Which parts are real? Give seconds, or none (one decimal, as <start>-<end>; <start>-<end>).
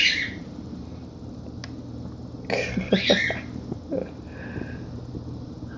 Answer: 1.6-5.1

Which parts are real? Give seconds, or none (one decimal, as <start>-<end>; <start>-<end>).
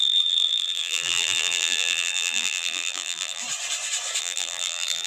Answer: 3.4-4.2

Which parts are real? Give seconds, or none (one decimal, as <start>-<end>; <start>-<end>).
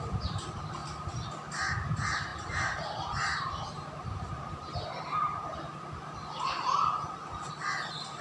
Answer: 0.8-1.5; 5.7-8.2